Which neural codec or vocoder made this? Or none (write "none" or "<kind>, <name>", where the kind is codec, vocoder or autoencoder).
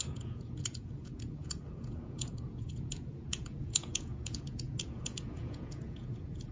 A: vocoder, Vocos